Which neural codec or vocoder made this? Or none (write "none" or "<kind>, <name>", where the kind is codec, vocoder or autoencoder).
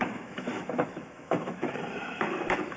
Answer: autoencoder, DAC-VAE